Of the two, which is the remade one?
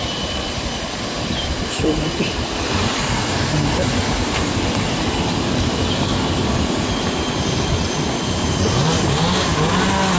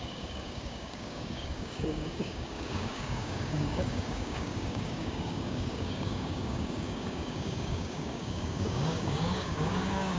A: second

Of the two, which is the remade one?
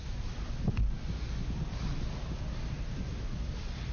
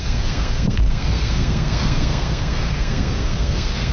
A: second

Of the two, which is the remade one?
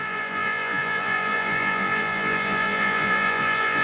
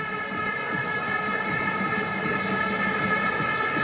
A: first